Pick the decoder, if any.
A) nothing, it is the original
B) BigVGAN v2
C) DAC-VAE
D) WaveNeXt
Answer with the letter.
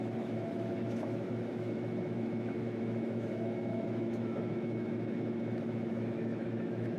C